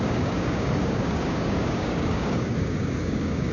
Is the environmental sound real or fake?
fake